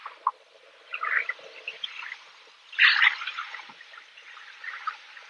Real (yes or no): yes